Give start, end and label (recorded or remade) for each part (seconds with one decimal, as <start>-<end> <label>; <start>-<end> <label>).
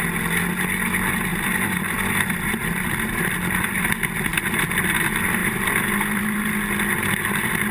0.0-1.3 recorded; 1.3-3.8 remade; 3.8-5.4 recorded; 5.4-6.5 remade; 6.5-7.7 recorded